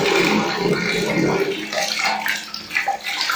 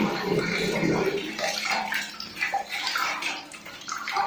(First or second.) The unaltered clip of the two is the first